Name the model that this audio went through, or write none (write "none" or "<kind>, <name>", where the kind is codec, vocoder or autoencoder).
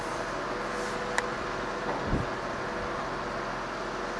none